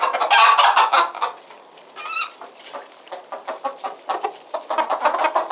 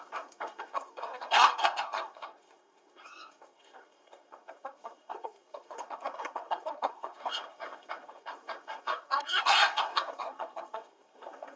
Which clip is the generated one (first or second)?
second